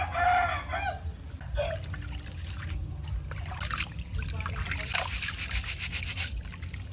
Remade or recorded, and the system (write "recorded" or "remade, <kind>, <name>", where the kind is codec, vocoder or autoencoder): recorded